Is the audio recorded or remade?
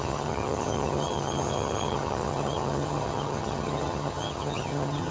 remade